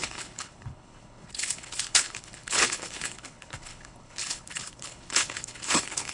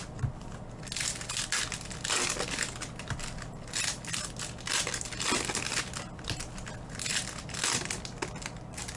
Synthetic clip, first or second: first